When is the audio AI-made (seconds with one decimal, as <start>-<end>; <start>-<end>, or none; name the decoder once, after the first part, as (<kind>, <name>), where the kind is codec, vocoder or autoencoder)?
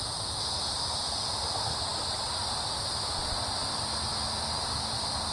1.9-2.9 (vocoder, BigVGAN v2)